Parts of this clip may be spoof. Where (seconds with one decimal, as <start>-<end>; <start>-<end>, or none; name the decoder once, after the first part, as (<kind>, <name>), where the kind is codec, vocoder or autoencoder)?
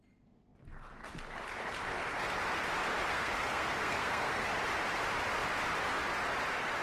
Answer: 3.1-4.5 (codec, SNAC)